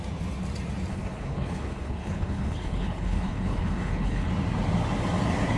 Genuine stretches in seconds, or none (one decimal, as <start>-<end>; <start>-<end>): 0.0-0.9; 4.3-5.6